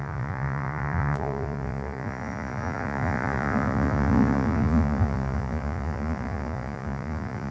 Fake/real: fake